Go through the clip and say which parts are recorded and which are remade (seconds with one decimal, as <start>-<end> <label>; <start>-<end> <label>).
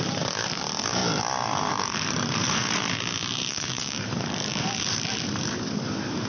0.0-1.0 remade; 1.0-1.7 recorded; 1.7-6.3 remade